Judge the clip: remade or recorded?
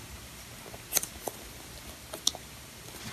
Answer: recorded